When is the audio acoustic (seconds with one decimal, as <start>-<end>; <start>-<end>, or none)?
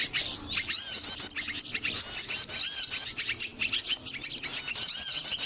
0.0-5.5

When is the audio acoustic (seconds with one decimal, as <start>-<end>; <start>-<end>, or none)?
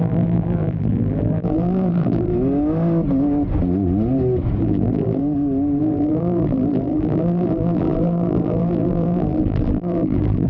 2.3-4.6; 5.2-5.8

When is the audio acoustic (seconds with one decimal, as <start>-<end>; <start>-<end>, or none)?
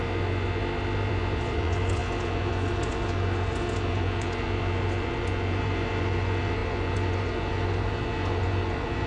0.6-1.1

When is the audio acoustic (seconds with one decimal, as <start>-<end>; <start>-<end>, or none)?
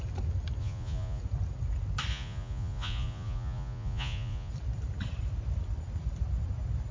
0.0-0.6; 1.2-2.1; 4.5-6.9